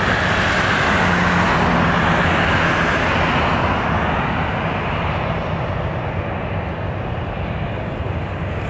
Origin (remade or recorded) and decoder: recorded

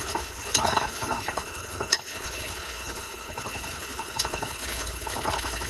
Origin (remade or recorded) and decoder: remade, codec, HILCodec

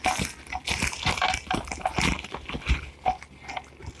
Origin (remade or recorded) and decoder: recorded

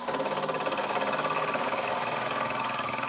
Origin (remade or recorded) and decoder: remade, codec, DAC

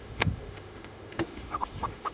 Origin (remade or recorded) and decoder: remade, autoencoder, DAC-VAE